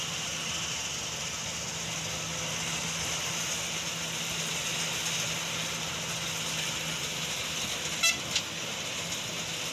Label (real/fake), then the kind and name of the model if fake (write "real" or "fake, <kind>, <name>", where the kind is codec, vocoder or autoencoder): real